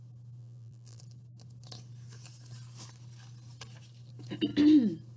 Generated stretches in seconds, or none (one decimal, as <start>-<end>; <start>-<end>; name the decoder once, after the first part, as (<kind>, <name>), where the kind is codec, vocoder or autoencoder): 0.4-1.0 (vocoder, BigVGAN v2)